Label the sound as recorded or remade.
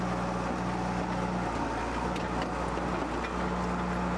recorded